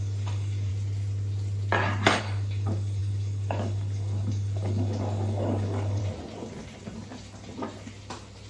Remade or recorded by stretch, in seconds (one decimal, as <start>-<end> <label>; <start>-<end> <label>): 0.0-0.7 remade; 0.7-2.2 recorded; 2.2-6.0 remade; 6.0-8.5 recorded